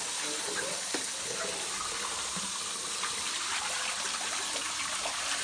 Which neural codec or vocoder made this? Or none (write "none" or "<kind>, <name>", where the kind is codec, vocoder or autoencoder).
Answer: vocoder, BigVGAN v2